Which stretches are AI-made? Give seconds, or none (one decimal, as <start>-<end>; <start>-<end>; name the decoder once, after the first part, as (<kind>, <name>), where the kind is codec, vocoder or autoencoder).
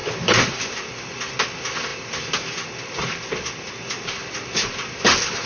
none